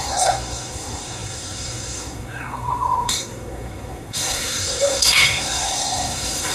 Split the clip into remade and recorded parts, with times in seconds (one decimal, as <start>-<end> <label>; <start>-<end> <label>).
0.0-6.5 remade